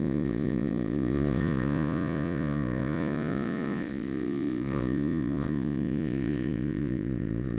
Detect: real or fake fake